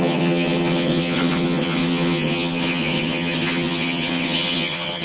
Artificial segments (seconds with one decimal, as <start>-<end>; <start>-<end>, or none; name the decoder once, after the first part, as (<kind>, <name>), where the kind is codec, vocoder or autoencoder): 0.0-5.0 (vocoder, HiFi-GAN)